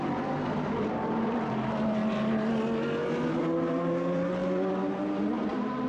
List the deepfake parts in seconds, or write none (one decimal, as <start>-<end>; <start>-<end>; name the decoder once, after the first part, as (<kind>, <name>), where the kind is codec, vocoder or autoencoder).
0.0-2.0 (vocoder, BigVGAN v2); 3.4-5.9

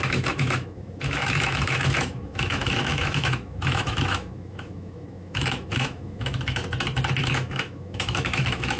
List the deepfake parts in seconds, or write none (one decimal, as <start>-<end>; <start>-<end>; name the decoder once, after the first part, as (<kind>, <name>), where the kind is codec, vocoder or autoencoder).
0.0-6.6 (autoencoder, DAC-VAE); 7.2-8.8

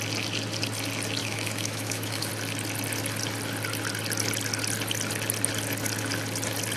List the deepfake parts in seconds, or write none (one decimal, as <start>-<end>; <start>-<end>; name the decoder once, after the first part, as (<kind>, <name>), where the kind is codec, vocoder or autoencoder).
1.2-2.3 (autoencoder, DAC-VAE)

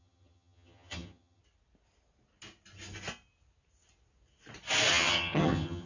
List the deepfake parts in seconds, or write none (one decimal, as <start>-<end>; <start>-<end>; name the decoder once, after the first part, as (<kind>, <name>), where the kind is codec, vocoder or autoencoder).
0.0-1.4 (vocoder, HiFi-GAN); 4.9-5.9

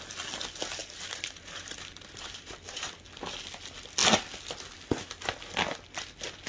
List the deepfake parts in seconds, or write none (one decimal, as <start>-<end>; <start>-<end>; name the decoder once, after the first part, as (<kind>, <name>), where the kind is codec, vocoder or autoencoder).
0.8-2.9 (vocoder, BigVGAN v2)

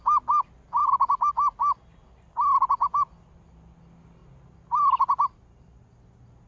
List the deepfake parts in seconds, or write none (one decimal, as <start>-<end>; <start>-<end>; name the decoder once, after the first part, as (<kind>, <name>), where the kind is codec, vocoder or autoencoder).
0.8-1.3 (vocoder, BigVGAN v2)

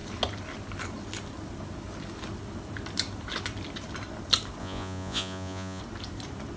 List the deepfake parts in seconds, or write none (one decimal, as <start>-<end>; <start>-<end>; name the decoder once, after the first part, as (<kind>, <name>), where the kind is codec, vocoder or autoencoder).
4.6-5.8 (vocoder, Vocos)

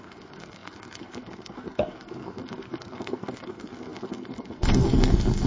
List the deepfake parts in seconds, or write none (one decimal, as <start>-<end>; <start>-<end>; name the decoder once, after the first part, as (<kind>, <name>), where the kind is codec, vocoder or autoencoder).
0.0-5.5 (codec, SNAC)